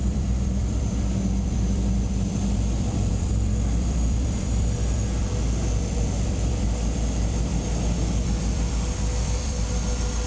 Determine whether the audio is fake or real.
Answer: fake